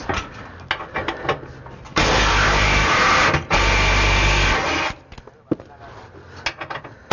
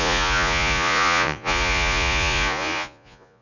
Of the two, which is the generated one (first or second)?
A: second